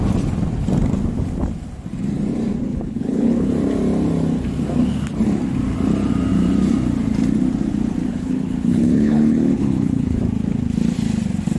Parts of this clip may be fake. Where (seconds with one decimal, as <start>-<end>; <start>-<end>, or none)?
2.7-3.5; 8.1-10.2